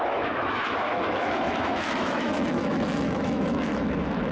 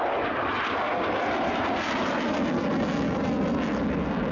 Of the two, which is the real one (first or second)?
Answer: second